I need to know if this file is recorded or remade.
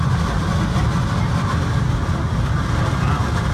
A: recorded